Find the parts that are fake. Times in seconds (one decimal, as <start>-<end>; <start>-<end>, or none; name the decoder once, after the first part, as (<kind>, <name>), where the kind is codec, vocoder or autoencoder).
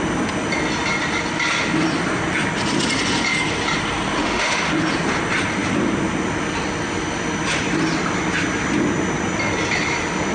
4.2-4.7 (autoencoder, DAC-VAE)